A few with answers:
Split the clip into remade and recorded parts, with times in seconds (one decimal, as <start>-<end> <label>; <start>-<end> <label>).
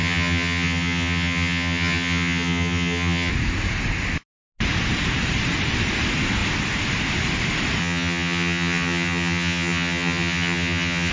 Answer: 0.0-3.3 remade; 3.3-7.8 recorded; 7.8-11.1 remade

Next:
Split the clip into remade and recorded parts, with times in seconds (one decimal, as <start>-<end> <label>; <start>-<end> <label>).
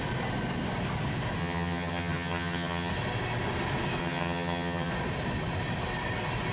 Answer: 0.0-1.4 recorded; 1.4-2.9 remade; 2.9-4.0 recorded; 4.0-4.9 remade; 4.9-6.5 recorded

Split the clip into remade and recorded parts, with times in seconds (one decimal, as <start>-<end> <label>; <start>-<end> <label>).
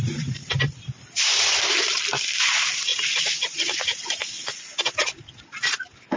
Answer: 0.0-6.2 recorded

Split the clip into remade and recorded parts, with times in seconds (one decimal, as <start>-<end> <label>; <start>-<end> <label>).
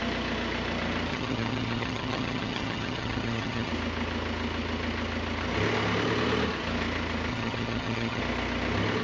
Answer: 0.0-1.1 recorded; 1.1-3.7 remade; 3.7-7.3 recorded; 7.3-8.2 remade; 8.2-9.0 recorded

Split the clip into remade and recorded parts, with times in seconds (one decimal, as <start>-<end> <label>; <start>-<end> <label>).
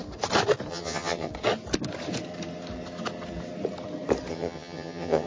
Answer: 0.0-0.7 recorded; 0.7-1.3 remade; 1.3-4.3 recorded; 4.3-5.3 remade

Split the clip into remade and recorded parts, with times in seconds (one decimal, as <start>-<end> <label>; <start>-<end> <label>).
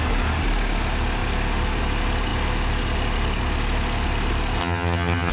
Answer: 0.0-4.6 recorded; 4.6-5.3 remade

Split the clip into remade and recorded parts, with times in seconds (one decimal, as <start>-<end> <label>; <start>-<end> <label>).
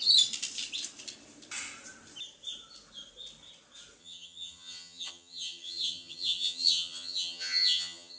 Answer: 0.0-4.0 recorded; 4.0-8.2 remade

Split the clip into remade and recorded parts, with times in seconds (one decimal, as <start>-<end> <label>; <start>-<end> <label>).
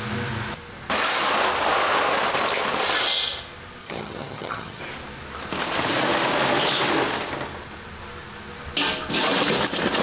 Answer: 0.0-3.8 recorded; 3.8-4.8 remade; 4.8-10.0 recorded